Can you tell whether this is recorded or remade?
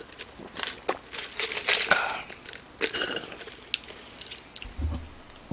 recorded